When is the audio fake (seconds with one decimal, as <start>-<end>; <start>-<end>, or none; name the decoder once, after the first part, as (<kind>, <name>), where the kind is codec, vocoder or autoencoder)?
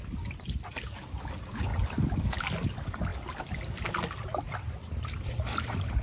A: none